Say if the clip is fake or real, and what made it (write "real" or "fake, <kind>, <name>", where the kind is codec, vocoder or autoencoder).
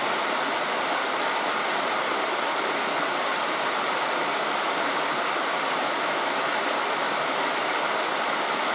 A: fake, vocoder, BigVGAN v2